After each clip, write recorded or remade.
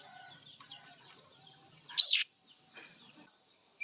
remade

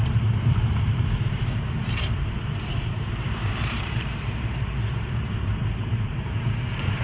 remade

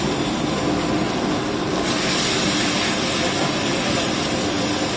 recorded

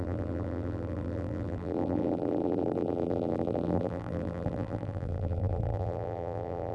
remade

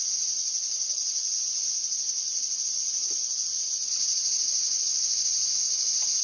remade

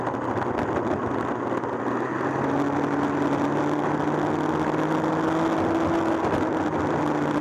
recorded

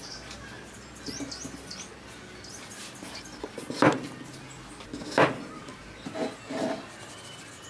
recorded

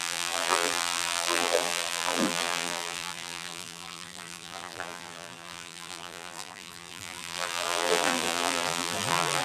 remade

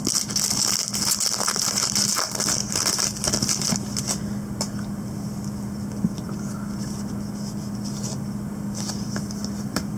recorded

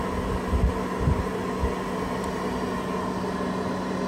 recorded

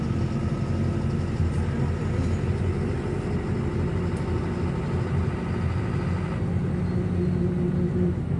recorded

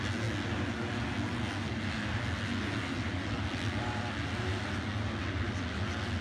recorded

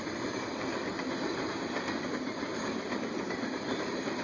remade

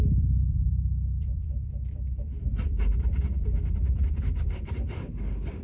remade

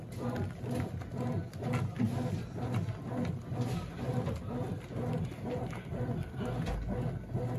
recorded